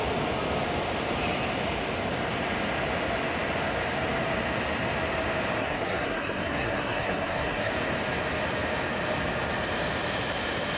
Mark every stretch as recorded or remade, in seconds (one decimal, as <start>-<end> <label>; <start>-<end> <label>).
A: 0.0-5.6 recorded; 5.6-7.7 remade; 7.7-10.8 recorded

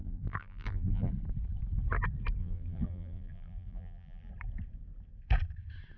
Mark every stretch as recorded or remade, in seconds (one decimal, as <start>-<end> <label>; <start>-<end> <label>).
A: 0.0-1.1 remade; 1.1-2.4 recorded; 2.4-4.3 remade; 4.3-6.0 recorded

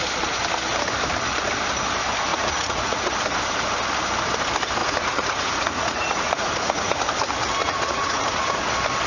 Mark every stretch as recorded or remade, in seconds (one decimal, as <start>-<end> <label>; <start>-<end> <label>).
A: 0.0-2.3 recorded; 2.3-3.1 remade; 3.1-4.8 recorded; 4.8-7.0 remade; 7.0-7.6 recorded; 7.6-8.6 remade; 8.6-9.1 recorded

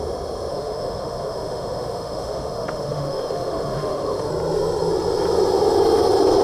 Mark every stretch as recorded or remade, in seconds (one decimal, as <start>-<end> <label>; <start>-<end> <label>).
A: 0.0-0.5 recorded; 0.5-4.3 remade; 4.3-6.4 recorded

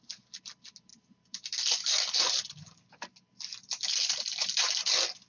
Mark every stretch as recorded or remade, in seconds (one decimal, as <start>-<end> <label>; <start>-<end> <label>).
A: 0.0-5.3 recorded

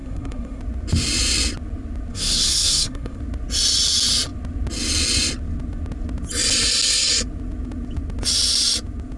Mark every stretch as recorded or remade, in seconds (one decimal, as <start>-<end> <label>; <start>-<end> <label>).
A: 0.0-0.6 remade; 0.6-2.1 recorded; 2.1-3.2 remade; 3.2-9.2 recorded